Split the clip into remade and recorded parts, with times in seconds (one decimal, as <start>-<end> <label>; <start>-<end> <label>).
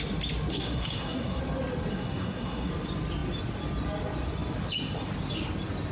0.0-0.5 recorded; 0.5-1.4 remade; 1.4-1.9 recorded; 1.9-2.7 remade; 2.7-5.9 recorded